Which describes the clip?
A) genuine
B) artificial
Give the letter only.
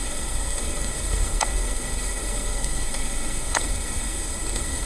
B